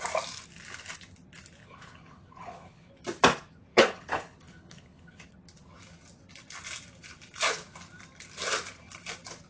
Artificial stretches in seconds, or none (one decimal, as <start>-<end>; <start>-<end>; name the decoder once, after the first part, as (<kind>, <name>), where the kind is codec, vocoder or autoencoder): 1.6-2.9 (codec, HILCodec); 3.7-5.2